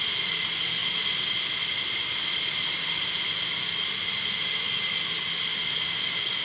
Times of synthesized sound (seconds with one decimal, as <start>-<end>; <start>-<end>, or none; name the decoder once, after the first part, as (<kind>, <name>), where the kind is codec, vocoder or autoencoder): none